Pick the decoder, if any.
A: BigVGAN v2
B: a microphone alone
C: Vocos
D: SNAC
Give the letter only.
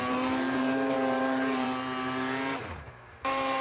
A